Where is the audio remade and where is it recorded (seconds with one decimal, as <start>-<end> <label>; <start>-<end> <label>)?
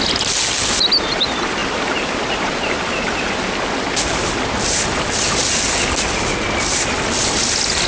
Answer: 0.0-7.9 recorded